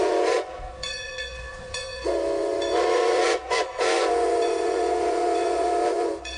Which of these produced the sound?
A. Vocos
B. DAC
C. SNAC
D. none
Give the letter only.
A